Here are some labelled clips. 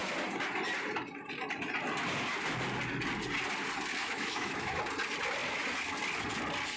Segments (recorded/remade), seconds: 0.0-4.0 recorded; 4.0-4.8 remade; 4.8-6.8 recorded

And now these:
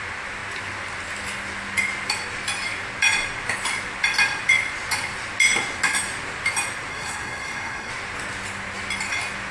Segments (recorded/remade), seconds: 0.0-6.9 recorded; 6.9-7.9 remade; 7.9-9.5 recorded

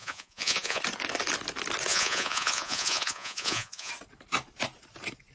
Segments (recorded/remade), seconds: 0.0-0.8 remade; 0.8-1.9 recorded; 1.9-3.9 remade; 3.9-5.3 recorded

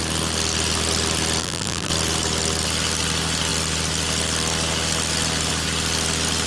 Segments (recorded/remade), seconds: 0.0-1.4 recorded; 1.4-1.9 remade; 1.9-6.5 recorded

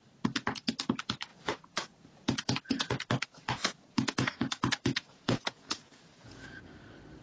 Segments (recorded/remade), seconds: 0.0-1.3 recorded; 1.3-2.9 remade; 2.9-3.6 recorded; 3.6-6.6 remade; 6.6-7.2 recorded

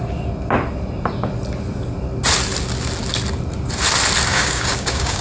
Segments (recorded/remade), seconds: 0.0-4.3 recorded; 4.3-5.2 remade

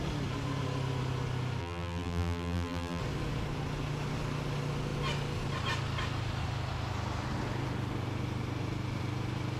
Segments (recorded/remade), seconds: 0.0-1.6 recorded; 1.6-3.0 remade; 3.0-9.6 recorded